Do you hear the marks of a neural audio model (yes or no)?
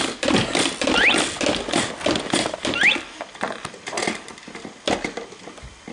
no